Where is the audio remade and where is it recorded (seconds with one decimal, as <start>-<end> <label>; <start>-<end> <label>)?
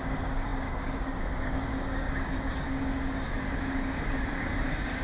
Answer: 0.0-5.0 remade